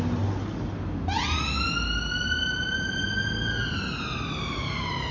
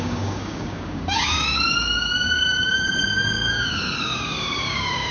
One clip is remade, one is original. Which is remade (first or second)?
second